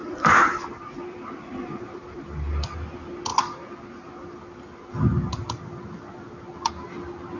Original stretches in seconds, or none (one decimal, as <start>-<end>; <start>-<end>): 2.5-7.4